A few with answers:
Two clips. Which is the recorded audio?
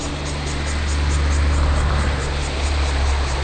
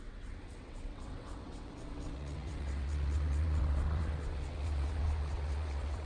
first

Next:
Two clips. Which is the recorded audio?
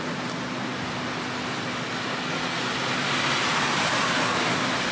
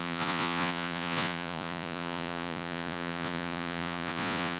first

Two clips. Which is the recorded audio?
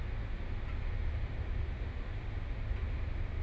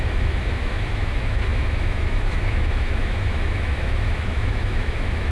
first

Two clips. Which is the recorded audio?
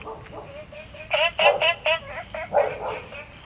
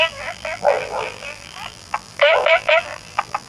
first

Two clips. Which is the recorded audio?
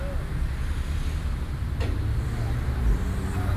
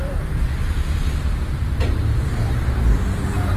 first